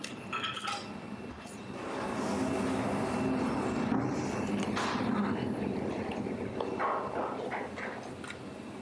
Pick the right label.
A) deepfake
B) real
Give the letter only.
B